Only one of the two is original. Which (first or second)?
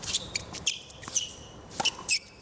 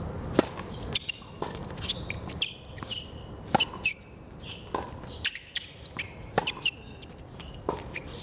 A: second